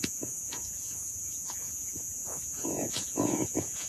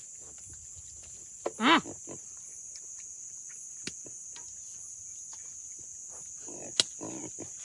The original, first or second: second